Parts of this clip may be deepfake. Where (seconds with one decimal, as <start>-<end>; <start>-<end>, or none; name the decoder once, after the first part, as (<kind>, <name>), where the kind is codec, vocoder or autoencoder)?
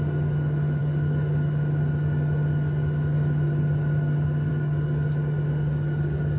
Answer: none